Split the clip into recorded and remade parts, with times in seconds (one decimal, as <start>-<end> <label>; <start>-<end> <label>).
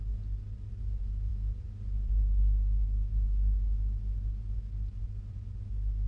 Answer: 0.0-6.1 recorded